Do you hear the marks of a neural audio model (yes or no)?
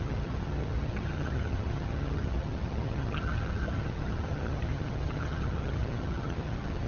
yes